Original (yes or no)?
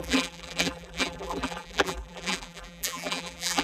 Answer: no